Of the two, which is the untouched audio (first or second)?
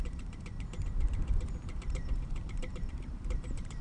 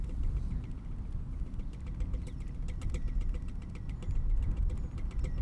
second